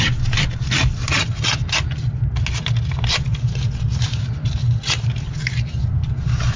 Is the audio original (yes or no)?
yes